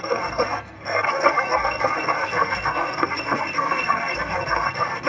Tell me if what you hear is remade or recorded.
remade